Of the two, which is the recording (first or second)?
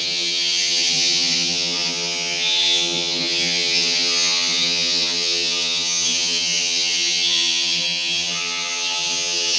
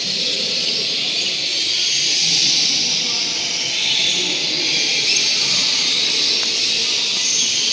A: second